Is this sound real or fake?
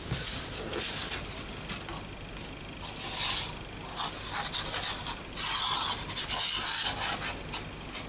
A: real